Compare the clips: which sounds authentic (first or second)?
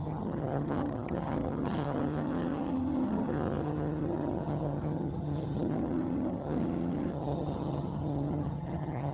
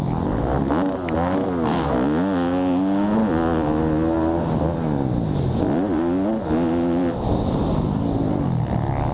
second